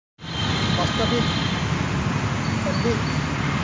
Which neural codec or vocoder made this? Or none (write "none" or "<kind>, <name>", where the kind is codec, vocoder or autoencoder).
none